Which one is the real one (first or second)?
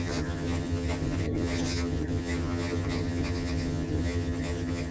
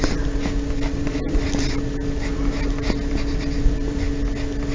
second